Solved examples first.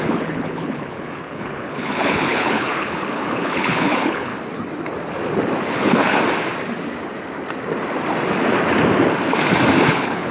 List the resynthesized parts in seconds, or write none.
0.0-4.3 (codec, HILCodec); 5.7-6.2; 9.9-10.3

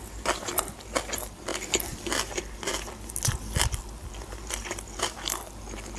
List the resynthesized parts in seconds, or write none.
none

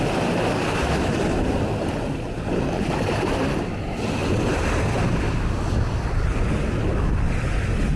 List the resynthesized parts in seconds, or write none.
none

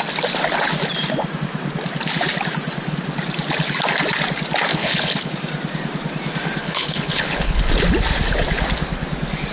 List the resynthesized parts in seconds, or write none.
4.7-5.3 (codec, HILCodec); 6.6-7.7

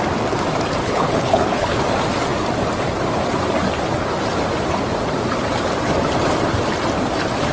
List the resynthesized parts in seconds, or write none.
0.8-1.8 (codec, HILCodec)

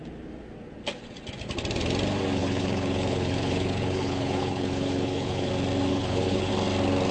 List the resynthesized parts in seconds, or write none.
2.4-5.5 (codec, HILCodec); 5.9-6.5

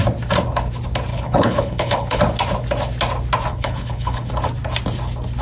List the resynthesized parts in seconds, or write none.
1.1-2.2 (codec, HILCodec); 3.5-4.3

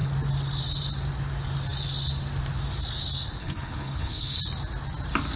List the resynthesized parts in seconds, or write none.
3.4-4.4 (codec, HILCodec)